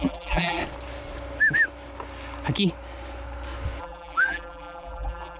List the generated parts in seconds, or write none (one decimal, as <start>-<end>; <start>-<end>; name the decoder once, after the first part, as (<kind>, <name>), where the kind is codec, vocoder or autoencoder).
0.0-0.6 (vocoder, BigVGAN v2); 3.8-5.4